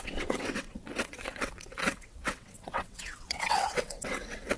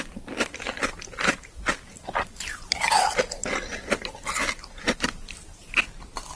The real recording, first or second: second